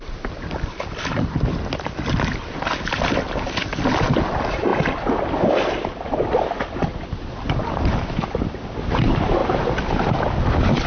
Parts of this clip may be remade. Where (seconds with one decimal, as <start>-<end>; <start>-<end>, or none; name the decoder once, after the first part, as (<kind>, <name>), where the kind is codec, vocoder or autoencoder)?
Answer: none